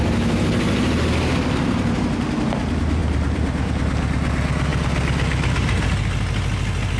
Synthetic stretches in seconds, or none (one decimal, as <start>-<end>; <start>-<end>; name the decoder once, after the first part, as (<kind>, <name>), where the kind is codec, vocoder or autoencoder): 3.0-3.7 (vocoder, BigVGAN v2)